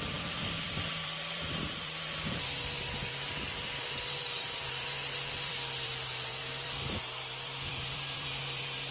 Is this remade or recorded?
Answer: remade